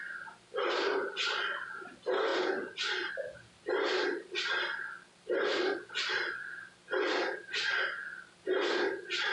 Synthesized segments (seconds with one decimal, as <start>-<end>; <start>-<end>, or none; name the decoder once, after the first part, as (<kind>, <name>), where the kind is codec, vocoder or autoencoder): none